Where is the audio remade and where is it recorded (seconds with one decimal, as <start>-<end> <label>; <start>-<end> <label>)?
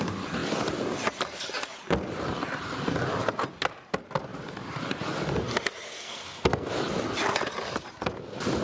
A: 0.0-5.9 recorded; 5.9-6.7 remade; 6.7-8.6 recorded